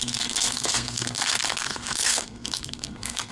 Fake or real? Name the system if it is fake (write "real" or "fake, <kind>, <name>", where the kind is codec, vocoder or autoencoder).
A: fake, codec, SNAC